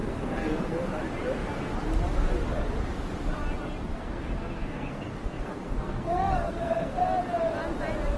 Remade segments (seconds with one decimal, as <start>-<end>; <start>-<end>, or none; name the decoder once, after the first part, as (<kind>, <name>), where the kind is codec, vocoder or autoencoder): 0.0-0.8 (codec, SNAC); 3.9-7.0